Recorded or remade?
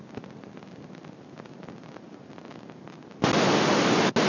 recorded